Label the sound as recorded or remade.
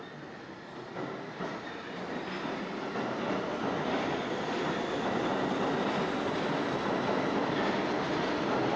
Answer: recorded